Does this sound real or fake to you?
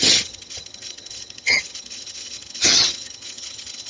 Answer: fake